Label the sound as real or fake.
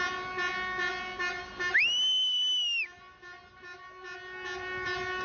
real